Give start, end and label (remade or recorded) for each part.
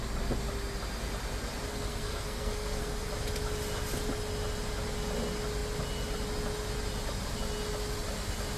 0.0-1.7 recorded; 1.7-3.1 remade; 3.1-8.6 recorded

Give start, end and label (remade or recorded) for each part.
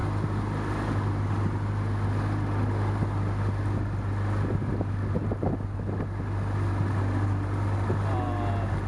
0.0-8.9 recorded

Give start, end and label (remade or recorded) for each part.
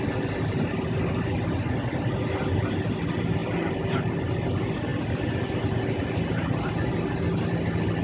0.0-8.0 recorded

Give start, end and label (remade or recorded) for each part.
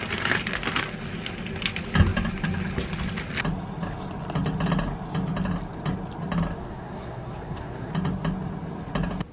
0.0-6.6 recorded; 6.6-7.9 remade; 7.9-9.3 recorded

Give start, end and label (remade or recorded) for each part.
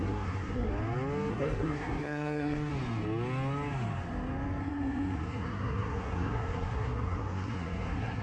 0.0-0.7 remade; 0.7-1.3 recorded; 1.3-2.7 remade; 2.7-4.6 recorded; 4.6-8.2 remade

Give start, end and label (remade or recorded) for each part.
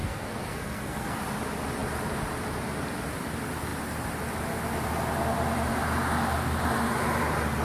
0.0-1.2 remade; 1.2-7.6 recorded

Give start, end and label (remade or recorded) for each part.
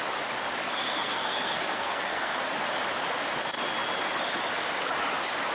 0.0-0.6 recorded; 0.6-2.4 remade; 2.4-5.5 recorded